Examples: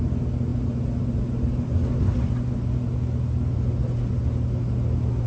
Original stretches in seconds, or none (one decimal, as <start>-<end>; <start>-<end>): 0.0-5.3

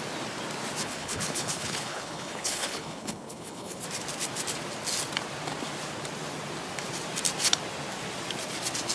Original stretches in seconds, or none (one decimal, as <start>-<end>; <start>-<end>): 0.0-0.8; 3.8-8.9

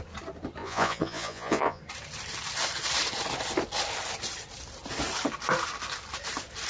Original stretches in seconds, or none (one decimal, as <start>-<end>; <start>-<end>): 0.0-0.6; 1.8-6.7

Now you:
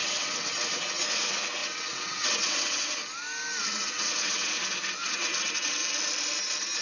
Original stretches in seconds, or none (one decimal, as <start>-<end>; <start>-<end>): 3.0-3.6; 5.8-6.8

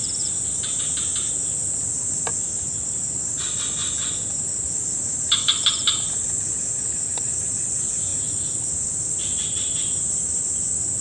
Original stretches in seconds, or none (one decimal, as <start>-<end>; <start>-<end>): 0.8-3.8; 6.2-8.1; 10.4-11.0